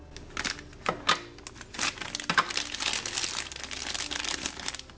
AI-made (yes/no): no